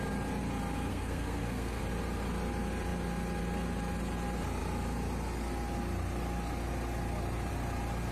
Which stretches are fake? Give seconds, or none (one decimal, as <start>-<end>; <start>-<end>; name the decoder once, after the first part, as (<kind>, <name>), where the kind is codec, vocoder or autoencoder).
0.9-1.8 (codec, SNAC)

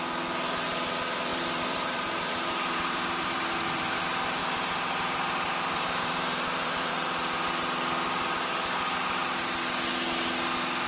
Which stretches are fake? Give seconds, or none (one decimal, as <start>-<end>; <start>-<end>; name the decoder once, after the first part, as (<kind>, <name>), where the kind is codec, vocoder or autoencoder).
1.3-4.0 (vocoder, BigVGAN v2); 4.4-6.9

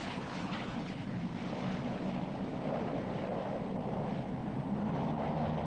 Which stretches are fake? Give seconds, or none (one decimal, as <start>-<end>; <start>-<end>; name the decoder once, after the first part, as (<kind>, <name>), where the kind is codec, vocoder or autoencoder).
0.0-1.2 (codec, HILCodec)

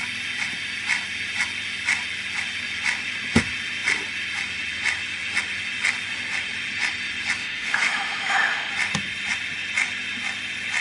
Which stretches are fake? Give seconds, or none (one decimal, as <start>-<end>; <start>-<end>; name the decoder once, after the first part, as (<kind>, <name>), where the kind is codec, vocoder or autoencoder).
7.4-8.7 (autoencoder, DAC-VAE)

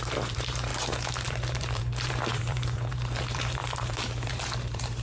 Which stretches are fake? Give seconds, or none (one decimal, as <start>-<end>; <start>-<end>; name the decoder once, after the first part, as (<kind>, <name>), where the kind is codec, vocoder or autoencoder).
0.0-5.0 (vocoder, BigVGAN v2)

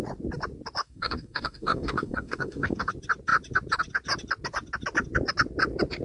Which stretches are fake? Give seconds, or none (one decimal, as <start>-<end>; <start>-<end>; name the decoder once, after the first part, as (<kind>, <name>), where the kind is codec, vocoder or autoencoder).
0.8-2.9 (codec, DAC)